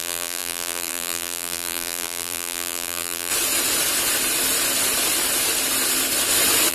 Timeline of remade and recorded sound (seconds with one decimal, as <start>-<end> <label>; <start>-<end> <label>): 0.0-3.3 remade; 3.3-6.7 recorded